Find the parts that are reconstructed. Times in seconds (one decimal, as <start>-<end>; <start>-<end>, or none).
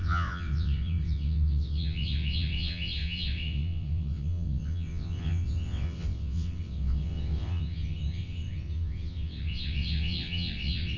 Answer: 0.0-11.0